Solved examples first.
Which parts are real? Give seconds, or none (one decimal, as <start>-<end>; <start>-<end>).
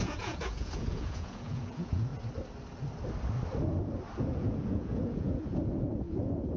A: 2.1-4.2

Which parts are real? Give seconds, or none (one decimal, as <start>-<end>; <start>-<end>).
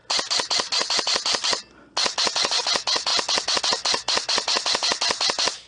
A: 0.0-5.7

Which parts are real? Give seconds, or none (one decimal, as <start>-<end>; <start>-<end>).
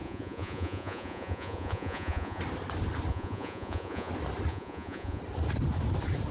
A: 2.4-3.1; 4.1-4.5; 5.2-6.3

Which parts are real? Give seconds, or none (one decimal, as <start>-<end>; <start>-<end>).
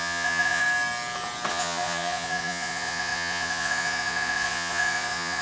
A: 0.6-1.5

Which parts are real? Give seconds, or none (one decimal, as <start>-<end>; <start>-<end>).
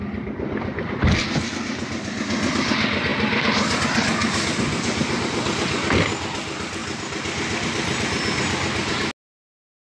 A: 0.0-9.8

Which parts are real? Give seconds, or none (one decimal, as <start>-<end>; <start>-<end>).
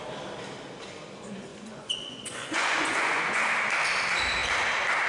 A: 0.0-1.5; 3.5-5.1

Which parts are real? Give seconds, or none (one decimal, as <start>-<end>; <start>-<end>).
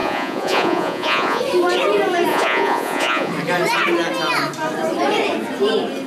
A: 1.4-2.3; 3.3-6.1